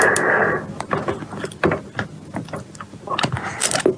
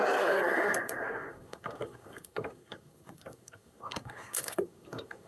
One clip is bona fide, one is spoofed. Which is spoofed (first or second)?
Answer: second